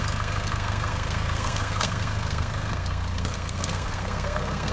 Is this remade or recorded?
remade